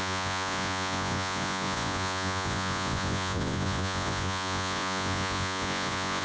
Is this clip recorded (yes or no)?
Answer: no